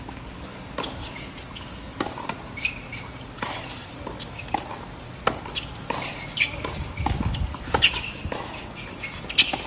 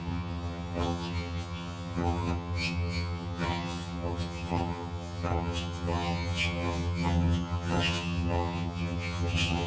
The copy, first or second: second